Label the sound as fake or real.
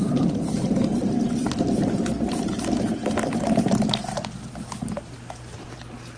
real